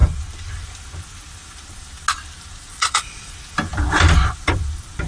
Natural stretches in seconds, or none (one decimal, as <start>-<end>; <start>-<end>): 0.0-2.7; 3.3-5.1